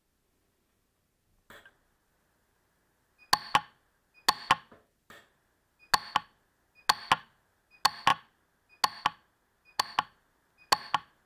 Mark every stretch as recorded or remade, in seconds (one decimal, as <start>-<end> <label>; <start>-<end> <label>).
0.0-11.3 recorded

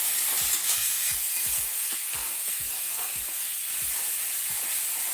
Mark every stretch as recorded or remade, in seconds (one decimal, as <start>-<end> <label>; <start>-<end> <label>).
0.0-0.6 recorded; 0.6-3.7 remade; 3.7-5.1 recorded

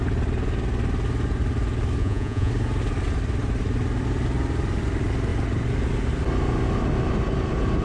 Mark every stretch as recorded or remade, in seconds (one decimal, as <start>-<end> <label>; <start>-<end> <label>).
0.0-2.0 recorded; 2.0-2.5 remade; 2.5-7.8 recorded

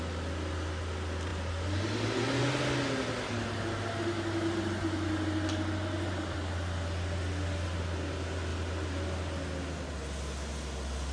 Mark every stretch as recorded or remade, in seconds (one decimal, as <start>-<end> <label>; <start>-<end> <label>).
0.0-11.1 recorded

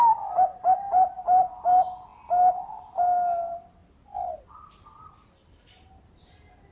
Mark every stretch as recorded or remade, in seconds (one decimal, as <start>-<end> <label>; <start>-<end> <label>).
0.0-6.7 recorded

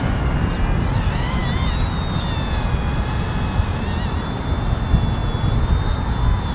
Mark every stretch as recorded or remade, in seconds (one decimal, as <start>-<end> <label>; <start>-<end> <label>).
0.0-6.5 recorded

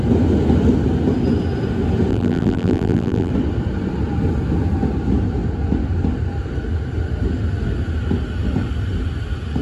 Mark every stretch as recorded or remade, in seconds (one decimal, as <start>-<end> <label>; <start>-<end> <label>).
0.0-2.1 recorded; 2.1-3.3 remade; 3.3-9.6 recorded